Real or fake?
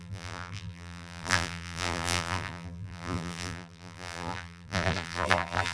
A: fake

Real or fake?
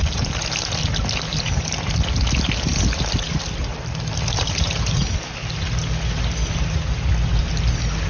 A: real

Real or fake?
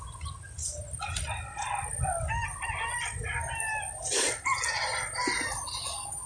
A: real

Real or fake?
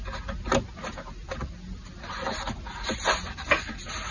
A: real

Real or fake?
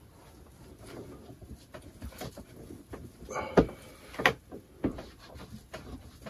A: real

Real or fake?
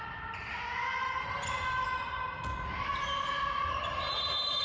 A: real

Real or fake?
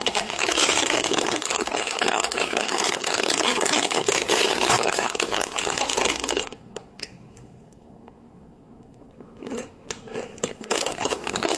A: fake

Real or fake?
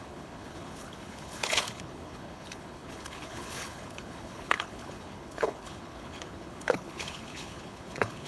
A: fake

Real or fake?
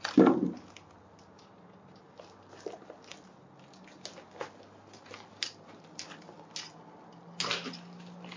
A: real